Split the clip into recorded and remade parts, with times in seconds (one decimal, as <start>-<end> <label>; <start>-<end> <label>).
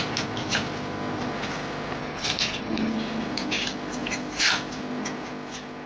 0.0-2.0 recorded; 2.0-2.9 remade; 2.9-5.9 recorded